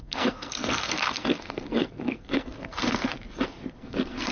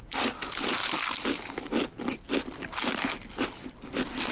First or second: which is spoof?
first